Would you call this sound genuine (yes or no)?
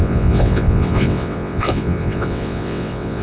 no